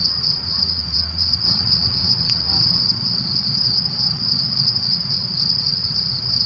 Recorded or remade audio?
remade